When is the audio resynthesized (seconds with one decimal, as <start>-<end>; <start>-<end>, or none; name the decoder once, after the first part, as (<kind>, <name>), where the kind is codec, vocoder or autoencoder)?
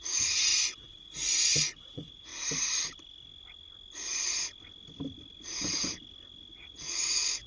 0.0-2.3 (vocoder, Vocos); 6.5-7.5